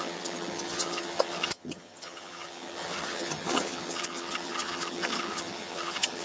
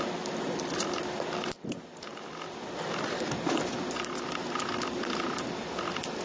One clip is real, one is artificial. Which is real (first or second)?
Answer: second